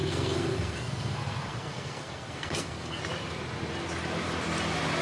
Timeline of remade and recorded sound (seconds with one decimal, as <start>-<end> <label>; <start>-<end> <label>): 0.0-3.0 remade; 3.0-5.0 recorded